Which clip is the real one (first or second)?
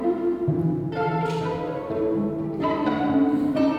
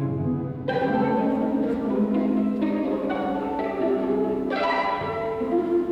first